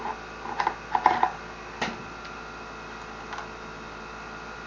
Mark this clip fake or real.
real